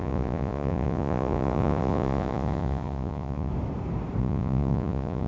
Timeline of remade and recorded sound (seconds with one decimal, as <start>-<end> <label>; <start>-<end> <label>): 0.0-3.5 remade; 3.5-4.2 recorded; 4.2-5.3 remade